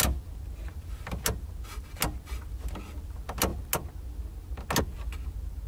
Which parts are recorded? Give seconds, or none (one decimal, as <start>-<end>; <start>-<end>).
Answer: 0.0-5.7